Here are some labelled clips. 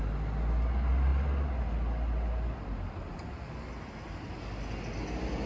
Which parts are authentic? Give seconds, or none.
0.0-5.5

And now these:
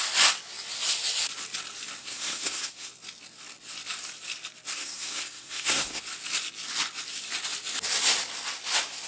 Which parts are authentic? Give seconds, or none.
0.0-2.0; 2.9-4.8; 6.0-9.1

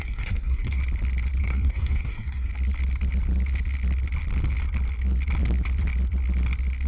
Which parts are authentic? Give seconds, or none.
0.8-1.4; 2.5-6.9

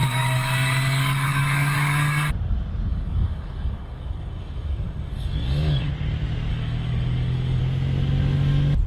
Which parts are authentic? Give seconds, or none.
2.3-2.9; 5.9-6.5; 7.6-8.9